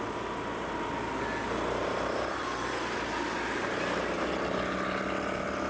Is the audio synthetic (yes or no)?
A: no